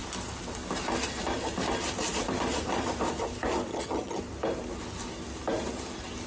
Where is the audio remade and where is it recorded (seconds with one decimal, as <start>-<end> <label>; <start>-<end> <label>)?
0.0-3.7 recorded; 3.7-4.2 remade; 4.2-6.3 recorded